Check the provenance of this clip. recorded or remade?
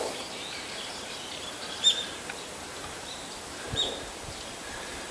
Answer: remade